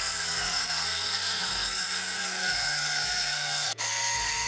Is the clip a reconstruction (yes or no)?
yes